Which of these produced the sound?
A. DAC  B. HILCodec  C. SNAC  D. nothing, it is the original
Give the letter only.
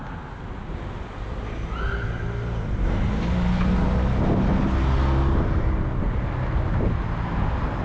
D